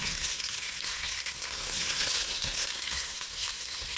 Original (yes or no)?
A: no